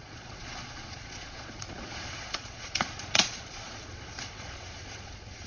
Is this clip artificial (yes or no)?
yes